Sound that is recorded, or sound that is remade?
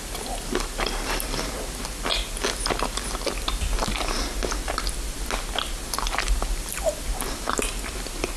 recorded